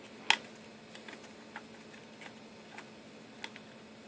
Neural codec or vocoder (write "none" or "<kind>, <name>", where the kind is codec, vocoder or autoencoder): none